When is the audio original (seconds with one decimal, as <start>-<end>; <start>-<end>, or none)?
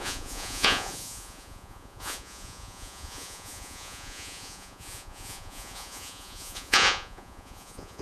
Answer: none